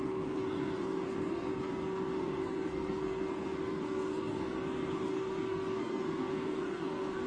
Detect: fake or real fake